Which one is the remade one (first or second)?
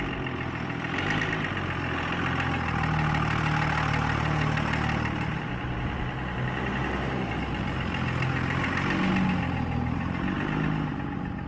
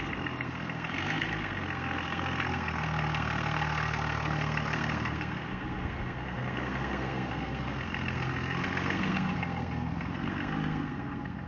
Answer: second